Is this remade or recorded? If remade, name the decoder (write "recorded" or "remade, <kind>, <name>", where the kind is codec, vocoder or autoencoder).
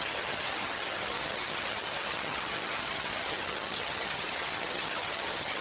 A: remade, vocoder, HiFi-GAN